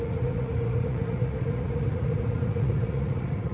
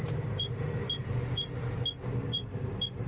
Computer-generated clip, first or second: first